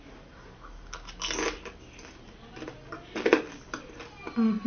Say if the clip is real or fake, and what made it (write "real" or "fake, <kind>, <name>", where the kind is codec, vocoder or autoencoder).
real